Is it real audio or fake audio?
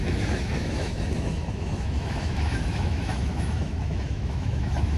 fake